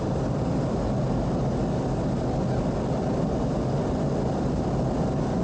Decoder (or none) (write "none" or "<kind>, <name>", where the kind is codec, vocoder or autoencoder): none